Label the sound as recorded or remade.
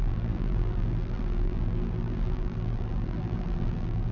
remade